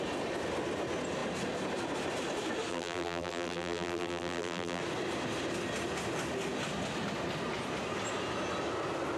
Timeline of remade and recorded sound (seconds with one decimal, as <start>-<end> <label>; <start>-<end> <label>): 0.0-2.7 recorded; 2.7-4.8 remade; 4.8-9.2 recorded